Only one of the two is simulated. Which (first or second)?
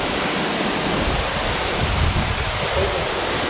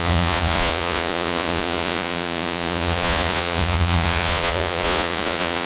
second